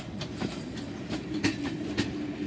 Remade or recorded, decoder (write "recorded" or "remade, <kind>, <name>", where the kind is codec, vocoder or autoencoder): recorded